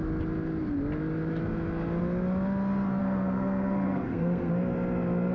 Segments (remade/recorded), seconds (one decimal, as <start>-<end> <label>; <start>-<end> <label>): 0.0-3.0 recorded; 3.0-4.5 remade; 4.5-5.3 recorded